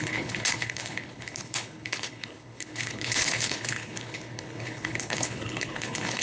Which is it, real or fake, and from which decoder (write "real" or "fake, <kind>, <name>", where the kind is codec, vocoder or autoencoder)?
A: fake, codec, HILCodec